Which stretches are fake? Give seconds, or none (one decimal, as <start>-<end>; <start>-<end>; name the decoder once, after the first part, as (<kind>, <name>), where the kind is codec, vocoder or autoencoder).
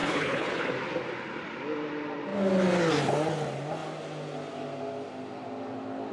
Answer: 0.0-0.7 (codec, HILCodec)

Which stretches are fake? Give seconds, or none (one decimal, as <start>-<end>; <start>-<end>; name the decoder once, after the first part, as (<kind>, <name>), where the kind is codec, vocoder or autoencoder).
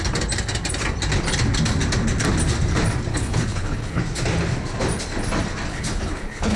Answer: 3.1-4.0 (codec, HILCodec); 5.7-6.6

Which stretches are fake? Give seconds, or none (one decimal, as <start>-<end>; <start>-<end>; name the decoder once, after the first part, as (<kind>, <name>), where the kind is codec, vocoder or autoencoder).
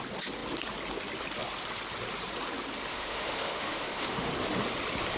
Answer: 2.9-4.3 (autoencoder, DAC-VAE)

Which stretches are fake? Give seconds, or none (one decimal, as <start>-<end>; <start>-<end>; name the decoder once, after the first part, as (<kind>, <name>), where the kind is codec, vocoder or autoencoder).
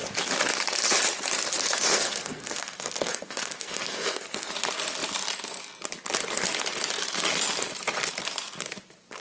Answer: 1.6-4.5 (codec, SNAC)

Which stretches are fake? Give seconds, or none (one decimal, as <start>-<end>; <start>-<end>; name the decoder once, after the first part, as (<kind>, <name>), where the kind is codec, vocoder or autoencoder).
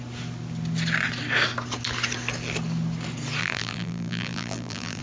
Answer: 3.4-5.0 (vocoder, BigVGAN v2)